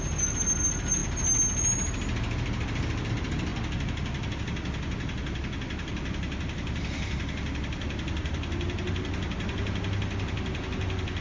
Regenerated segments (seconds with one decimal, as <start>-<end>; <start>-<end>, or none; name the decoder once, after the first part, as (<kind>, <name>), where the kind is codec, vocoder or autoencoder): none